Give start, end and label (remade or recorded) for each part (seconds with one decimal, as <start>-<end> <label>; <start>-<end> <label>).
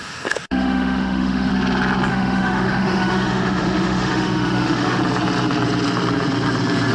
0.0-1.5 remade; 1.5-2.1 recorded; 2.1-5.0 remade; 5.0-6.9 recorded